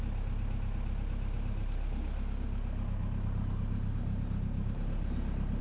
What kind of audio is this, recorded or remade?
recorded